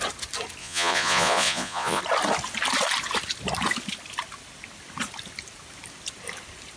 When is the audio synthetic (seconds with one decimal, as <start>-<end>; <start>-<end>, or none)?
0.6-2.0